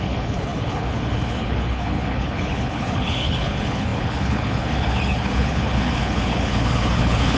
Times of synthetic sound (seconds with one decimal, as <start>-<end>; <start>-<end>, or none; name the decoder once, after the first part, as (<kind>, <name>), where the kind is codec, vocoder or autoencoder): 0.0-7.4 (codec, HILCodec)